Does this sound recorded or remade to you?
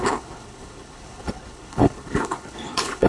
remade